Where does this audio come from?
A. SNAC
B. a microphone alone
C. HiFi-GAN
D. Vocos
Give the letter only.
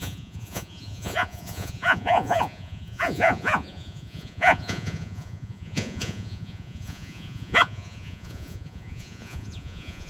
D